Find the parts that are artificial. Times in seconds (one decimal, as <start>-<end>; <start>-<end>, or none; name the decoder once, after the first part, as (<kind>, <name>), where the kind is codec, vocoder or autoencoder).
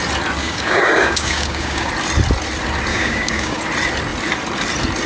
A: 0.4-1.9 (codec, DAC); 2.9-3.6